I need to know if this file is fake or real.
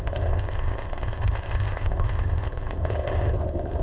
fake